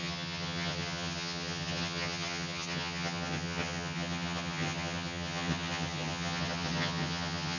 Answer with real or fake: fake